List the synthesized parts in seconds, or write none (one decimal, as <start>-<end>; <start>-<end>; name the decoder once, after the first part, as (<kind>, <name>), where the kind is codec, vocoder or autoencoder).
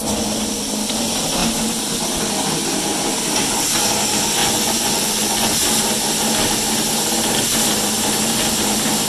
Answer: 4.4-5.5 (vocoder, Vocos)